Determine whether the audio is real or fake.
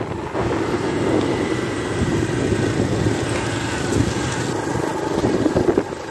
real